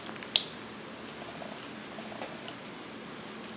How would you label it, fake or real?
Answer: real